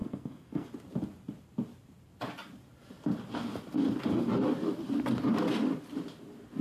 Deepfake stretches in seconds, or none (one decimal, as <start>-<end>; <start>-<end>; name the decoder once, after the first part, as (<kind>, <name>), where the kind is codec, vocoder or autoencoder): 0.0-0.7 (codec, SNAC)

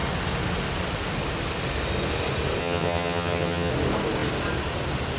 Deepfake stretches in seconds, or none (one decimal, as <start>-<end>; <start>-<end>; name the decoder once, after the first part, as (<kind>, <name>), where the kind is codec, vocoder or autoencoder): 2.6-3.7 (vocoder, HiFi-GAN)

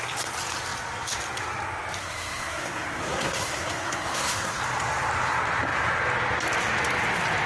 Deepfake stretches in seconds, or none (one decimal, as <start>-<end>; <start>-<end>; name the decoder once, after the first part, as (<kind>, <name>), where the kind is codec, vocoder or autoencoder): 2.0-4.6 (codec, SNAC)